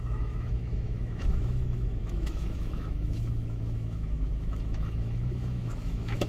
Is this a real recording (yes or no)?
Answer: no